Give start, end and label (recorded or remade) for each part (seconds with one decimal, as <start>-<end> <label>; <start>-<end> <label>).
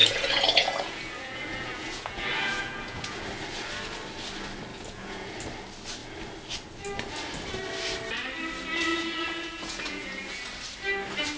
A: 0.0-3.2 remade; 3.2-4.7 recorded; 4.7-5.4 remade; 5.4-8.9 recorded; 8.9-10.4 remade; 10.4-11.4 recorded